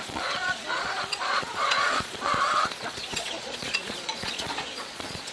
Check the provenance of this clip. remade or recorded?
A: remade